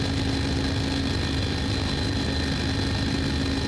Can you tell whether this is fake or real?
real